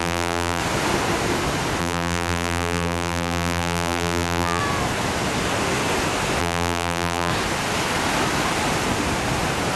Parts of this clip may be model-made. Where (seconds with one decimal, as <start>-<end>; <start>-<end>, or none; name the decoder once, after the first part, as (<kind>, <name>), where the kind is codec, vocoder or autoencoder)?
0.0-0.6 (vocoder, BigVGAN v2); 1.8-4.6; 6.4-7.3